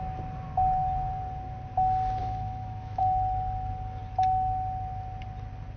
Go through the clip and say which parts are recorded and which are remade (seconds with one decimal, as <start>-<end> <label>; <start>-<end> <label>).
0.0-2.2 recorded; 2.2-3.0 remade; 3.0-5.8 recorded